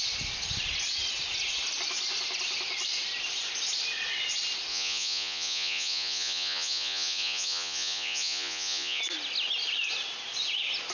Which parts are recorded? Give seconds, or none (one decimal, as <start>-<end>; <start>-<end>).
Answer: 0.0-4.7; 9.0-10.9